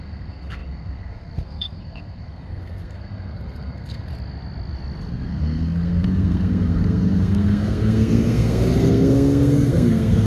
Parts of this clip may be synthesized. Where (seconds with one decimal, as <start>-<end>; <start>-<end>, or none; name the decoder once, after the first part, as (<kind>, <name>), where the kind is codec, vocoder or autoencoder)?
0.0-4.1 (codec, SNAC); 5.1-10.3